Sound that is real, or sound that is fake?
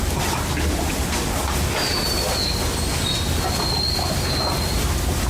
real